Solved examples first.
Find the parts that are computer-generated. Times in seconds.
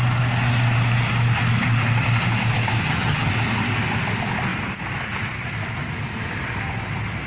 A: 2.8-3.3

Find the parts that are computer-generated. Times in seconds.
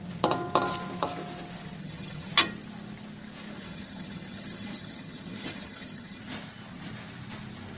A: 1.8-2.3; 3.6-6.2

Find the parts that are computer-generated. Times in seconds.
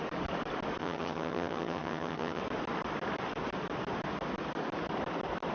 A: 0.8-2.4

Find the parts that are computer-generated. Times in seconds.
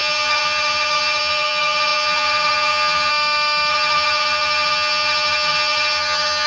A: 0.0-3.1; 3.7-6.5